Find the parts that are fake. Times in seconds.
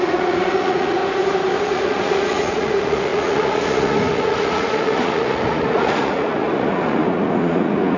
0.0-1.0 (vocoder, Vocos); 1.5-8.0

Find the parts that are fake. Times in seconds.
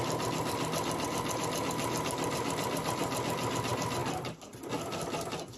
none